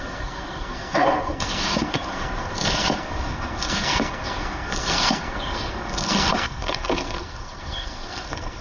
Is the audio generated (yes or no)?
yes